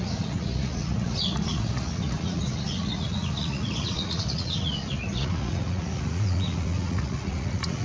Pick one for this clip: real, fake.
fake